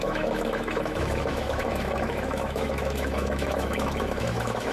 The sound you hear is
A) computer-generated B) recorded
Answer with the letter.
A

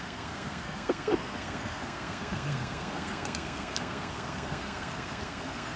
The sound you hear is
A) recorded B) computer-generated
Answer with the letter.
B